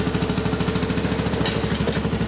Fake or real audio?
real